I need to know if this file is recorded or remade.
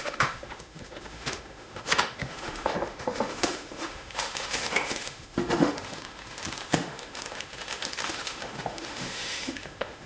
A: remade